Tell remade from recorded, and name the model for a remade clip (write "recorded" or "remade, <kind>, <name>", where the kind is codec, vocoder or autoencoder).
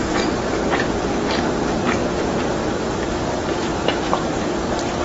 remade, vocoder, BigVGAN v2